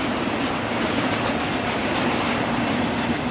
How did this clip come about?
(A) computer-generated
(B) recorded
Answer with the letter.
B